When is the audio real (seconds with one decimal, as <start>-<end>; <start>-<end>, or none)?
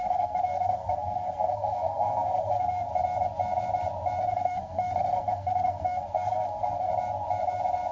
2.9-4.2; 6.9-7.9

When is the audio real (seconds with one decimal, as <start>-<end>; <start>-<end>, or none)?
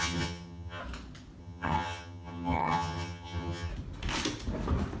0.8-1.4; 3.7-5.0